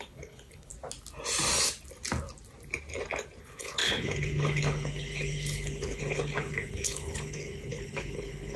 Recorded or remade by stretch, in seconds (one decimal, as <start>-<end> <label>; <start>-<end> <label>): 0.0-0.7 remade; 0.7-3.4 recorded; 3.4-8.6 remade